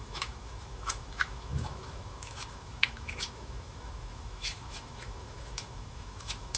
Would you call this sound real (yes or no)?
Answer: no